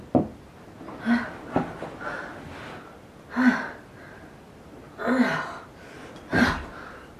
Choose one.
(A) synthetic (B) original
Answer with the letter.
B